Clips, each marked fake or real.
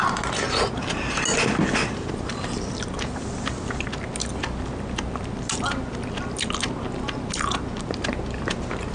real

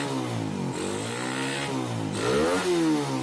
real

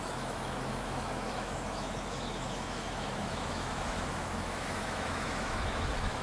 fake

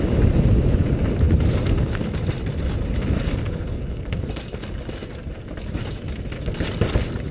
real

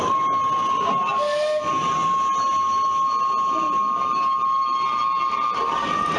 real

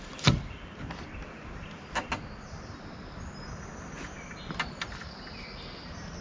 real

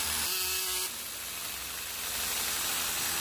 real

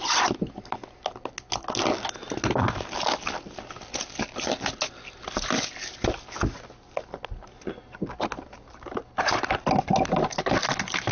real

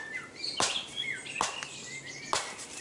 real